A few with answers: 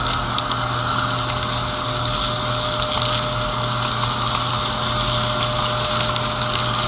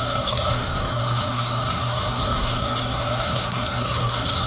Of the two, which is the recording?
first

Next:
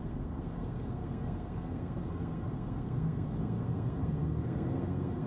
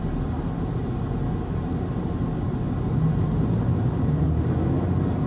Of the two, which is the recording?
second